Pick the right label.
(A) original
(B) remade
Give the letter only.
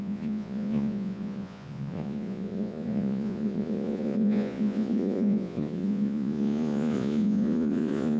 B